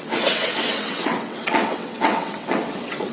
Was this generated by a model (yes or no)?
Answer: yes